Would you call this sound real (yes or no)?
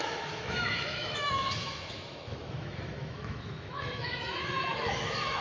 no